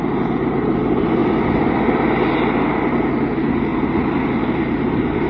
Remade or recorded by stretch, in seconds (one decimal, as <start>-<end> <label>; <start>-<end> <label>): 0.0-1.2 remade; 1.2-2.7 recorded; 2.7-5.3 remade